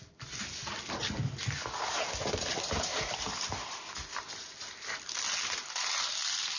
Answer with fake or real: real